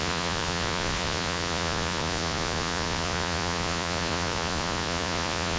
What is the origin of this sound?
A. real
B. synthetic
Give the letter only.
B